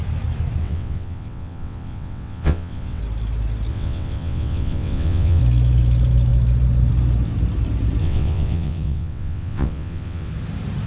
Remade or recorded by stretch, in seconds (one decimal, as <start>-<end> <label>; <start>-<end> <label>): 0.0-0.6 recorded; 0.6-3.0 remade; 3.0-3.7 recorded; 3.7-5.4 remade; 5.4-8.0 recorded; 8.0-10.3 remade; 10.3-10.9 recorded